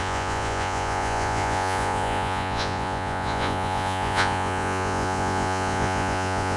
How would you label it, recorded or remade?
remade